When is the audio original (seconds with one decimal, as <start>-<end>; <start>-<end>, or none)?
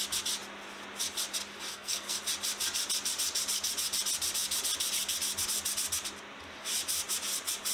0.0-1.7; 2.2-7.7